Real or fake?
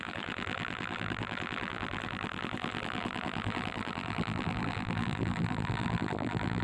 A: fake